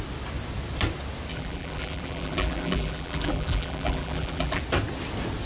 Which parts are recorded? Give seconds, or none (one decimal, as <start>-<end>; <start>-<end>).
0.0-1.3; 4.6-5.5